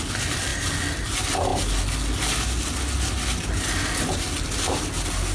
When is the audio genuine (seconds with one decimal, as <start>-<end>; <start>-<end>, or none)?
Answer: 0.0-5.3